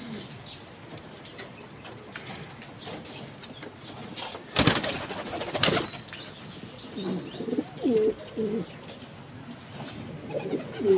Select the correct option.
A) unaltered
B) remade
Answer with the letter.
A